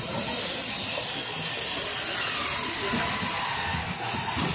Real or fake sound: real